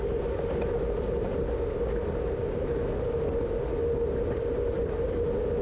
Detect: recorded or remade recorded